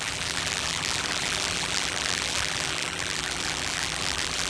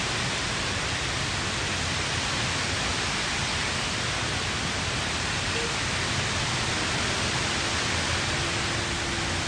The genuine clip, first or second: second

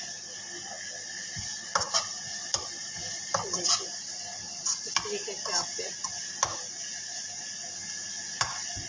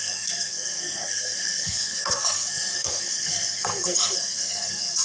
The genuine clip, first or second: first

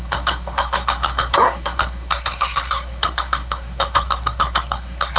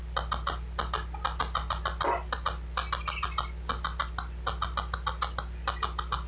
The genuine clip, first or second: second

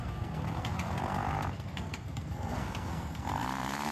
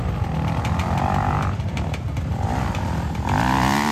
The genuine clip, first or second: second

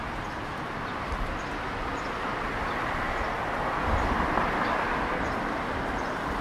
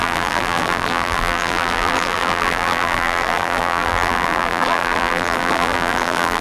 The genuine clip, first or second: first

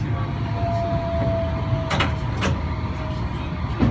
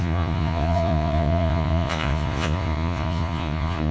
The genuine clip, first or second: first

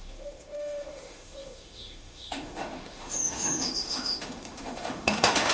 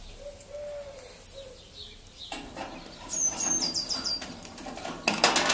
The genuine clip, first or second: second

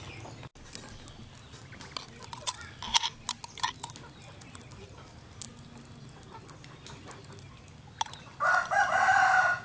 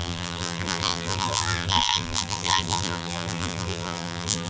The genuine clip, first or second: first